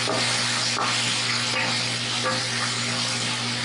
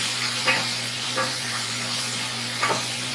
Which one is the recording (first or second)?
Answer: first